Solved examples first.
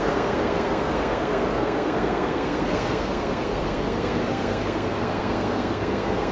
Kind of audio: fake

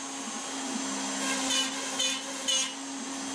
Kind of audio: real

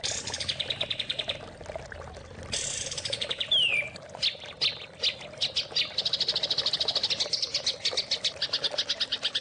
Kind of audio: real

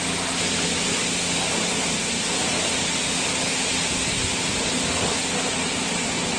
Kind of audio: real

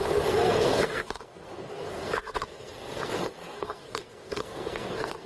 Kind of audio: fake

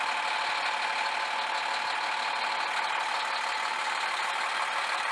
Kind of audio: real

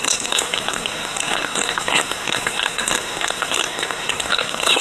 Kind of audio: fake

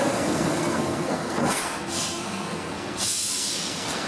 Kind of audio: fake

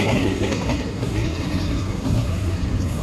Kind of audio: fake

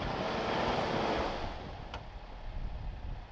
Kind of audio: real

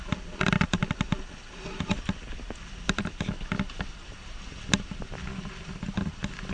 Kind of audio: real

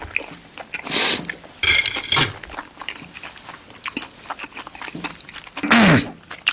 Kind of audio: real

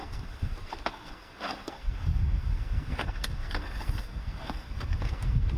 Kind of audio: fake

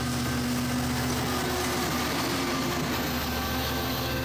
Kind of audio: real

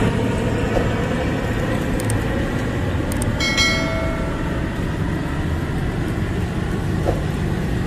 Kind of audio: real